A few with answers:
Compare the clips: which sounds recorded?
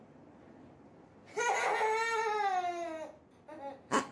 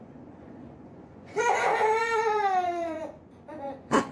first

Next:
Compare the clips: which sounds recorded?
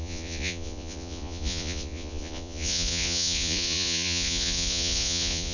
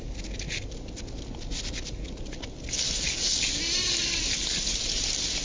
second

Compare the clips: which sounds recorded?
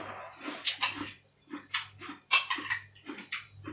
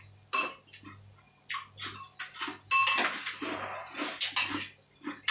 second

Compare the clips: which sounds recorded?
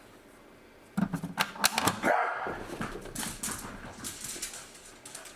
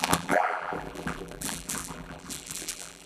first